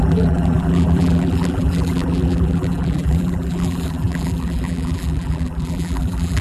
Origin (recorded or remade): remade